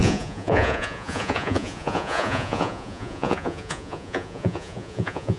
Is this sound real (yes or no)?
no